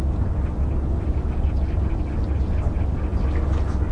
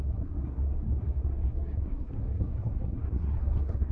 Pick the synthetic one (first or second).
second